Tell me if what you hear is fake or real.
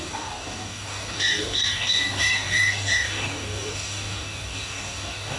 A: fake